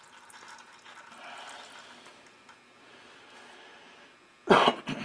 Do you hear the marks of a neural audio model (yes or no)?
no